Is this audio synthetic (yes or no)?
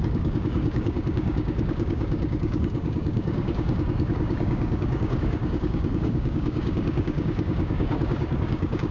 yes